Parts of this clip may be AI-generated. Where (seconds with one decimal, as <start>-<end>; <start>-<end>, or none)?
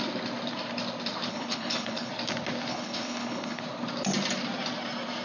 1.3-2.1; 2.7-3.6